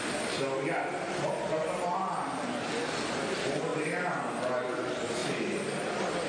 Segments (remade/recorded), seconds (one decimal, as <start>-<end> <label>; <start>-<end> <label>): 0.0-6.3 recorded